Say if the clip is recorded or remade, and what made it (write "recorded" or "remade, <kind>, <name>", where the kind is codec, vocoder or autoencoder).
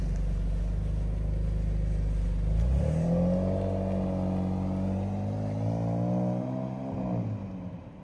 recorded